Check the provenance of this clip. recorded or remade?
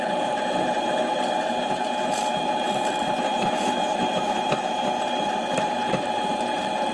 remade